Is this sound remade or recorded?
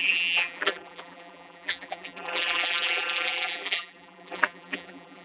remade